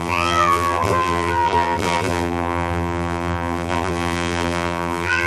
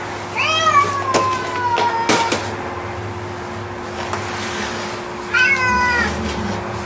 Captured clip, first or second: second